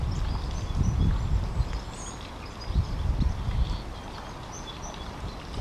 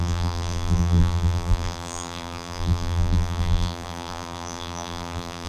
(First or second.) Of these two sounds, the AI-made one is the second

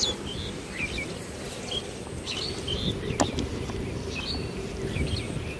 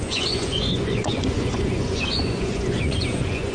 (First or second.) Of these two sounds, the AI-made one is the second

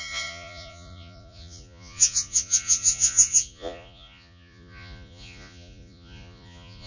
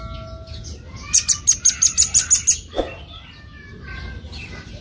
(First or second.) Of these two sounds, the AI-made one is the first